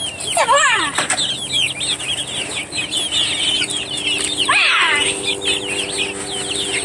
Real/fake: real